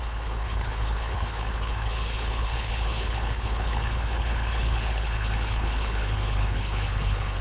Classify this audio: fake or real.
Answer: fake